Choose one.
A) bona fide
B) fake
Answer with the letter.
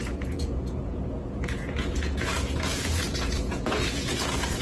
B